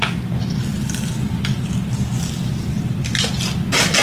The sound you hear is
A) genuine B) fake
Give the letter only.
A